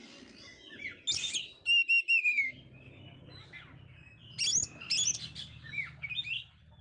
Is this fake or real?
real